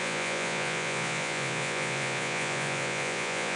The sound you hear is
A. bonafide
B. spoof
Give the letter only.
B